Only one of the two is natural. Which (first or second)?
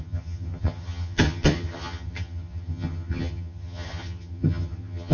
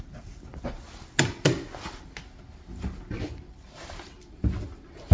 second